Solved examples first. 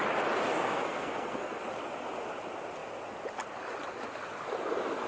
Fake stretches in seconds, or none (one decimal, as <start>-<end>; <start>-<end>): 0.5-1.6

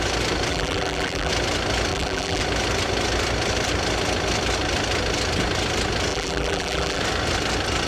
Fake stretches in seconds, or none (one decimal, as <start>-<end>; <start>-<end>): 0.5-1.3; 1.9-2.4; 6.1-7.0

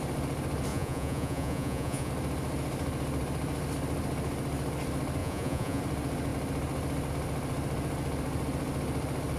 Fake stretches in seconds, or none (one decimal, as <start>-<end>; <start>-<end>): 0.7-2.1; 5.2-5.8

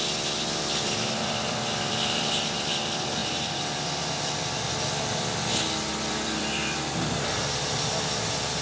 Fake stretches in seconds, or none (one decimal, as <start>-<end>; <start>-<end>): 0.0-3.2; 5.9-8.6

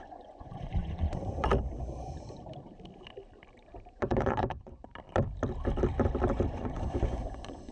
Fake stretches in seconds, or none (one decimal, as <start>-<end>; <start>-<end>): 0.0-1.5; 3.9-4.9; 6.5-7.7

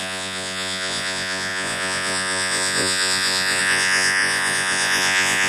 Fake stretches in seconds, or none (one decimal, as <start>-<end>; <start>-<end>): 0.0-5.5